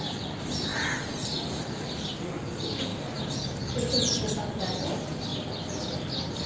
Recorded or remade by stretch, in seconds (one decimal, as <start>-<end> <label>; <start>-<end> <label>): 0.0-6.5 recorded